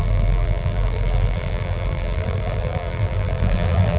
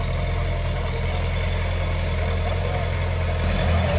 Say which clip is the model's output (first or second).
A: first